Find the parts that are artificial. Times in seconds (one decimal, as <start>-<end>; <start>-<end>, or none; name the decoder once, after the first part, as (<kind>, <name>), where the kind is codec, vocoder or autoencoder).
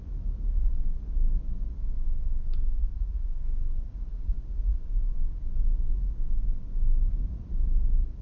2.8-3.3 (vocoder, Vocos); 3.9-4.8